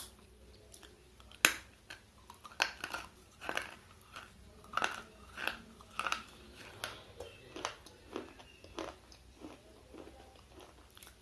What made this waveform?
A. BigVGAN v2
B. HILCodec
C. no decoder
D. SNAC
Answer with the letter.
C